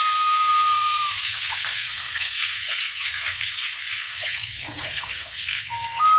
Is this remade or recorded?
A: remade